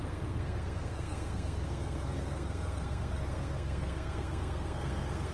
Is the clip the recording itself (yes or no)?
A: no